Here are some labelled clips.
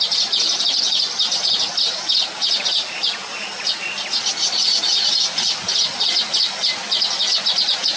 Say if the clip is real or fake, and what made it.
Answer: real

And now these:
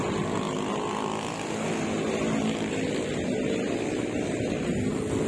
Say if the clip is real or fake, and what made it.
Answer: real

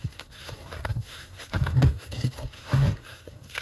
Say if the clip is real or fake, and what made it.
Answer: fake, codec, SNAC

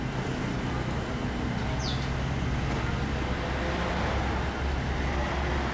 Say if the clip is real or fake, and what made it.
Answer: real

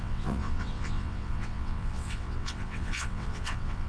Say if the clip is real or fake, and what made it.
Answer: fake, vocoder, WaveNeXt